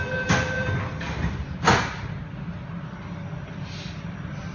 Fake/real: real